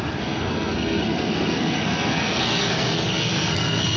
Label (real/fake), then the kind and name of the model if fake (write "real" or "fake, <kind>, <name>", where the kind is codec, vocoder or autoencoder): fake, codec, SNAC